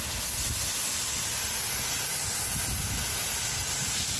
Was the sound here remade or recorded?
recorded